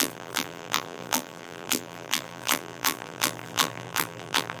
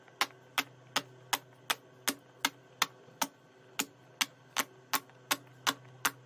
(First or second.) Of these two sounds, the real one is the second